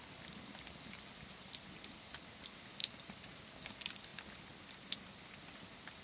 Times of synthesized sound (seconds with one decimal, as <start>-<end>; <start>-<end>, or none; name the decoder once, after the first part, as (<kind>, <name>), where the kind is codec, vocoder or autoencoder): 2.8-3.4 (vocoder, BigVGAN v2)